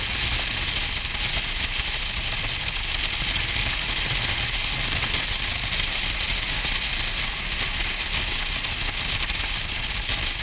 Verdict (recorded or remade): recorded